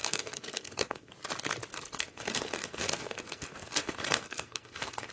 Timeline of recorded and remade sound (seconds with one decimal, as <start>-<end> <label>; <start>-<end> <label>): 0.0-1.1 remade; 1.1-1.7 recorded; 1.7-5.1 remade